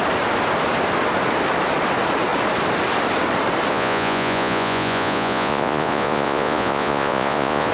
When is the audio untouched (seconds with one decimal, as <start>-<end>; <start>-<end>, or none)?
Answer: 0.0-3.7